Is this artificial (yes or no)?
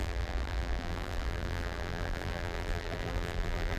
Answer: yes